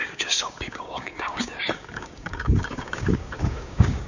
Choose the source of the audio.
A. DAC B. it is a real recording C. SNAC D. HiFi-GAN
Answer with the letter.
A